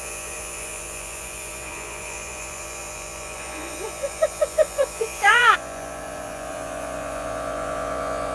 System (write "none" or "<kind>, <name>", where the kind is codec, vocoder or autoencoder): vocoder, Vocos